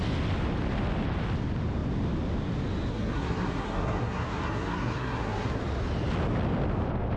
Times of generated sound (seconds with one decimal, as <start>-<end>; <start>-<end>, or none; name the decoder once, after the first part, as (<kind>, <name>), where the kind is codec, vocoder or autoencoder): 2.9-5.6 (codec, SNAC)